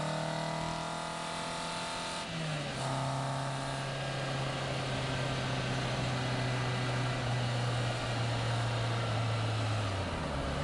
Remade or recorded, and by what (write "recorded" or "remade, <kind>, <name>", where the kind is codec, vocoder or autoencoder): recorded